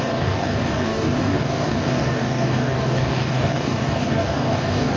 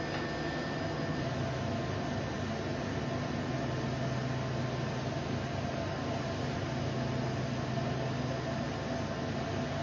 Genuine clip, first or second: second